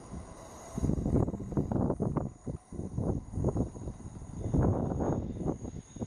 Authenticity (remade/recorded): recorded